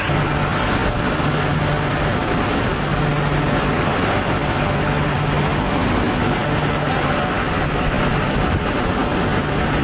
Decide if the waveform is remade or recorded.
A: recorded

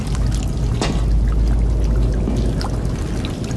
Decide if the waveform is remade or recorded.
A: recorded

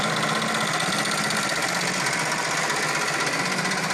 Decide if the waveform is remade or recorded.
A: recorded